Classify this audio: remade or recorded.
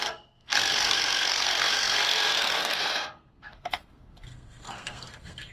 remade